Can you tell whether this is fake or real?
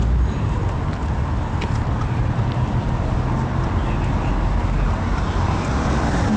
real